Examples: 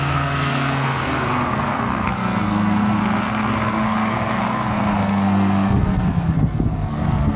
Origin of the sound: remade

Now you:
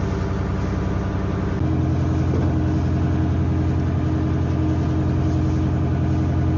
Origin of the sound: recorded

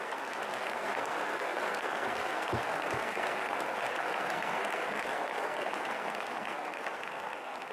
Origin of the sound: remade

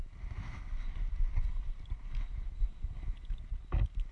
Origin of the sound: recorded